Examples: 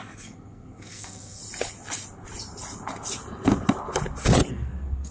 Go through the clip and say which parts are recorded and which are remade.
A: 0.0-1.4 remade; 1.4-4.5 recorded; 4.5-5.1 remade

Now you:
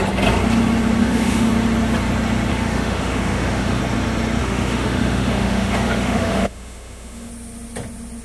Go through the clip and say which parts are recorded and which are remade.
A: 0.0-1.0 recorded; 1.0-1.5 remade; 1.5-2.5 recorded; 2.5-3.8 remade; 3.8-4.4 recorded; 4.4-7.3 remade; 7.3-8.2 recorded

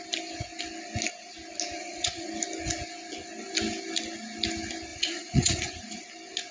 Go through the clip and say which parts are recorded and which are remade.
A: 0.0-1.8 recorded; 1.8-2.3 remade; 2.3-4.9 recorded; 4.9-6.0 remade; 6.0-6.5 recorded

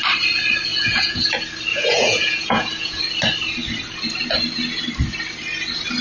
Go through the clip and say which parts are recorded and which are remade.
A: 0.0-0.7 recorded; 0.7-1.2 remade; 1.2-1.7 recorded; 1.7-3.0 remade; 3.0-6.0 recorded

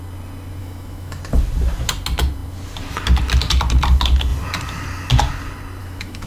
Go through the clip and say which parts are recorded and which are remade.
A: 0.0-0.6 recorded; 0.6-1.2 remade; 1.2-5.8 recorded; 5.8-6.3 remade

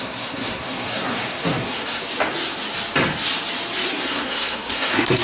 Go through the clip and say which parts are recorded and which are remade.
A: 0.0-2.0 remade; 2.0-3.9 recorded; 3.9-5.2 remade

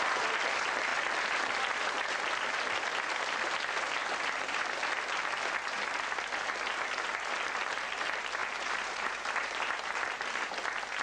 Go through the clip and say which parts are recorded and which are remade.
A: 0.0-8.4 recorded; 8.4-9.1 remade; 9.1-11.0 recorded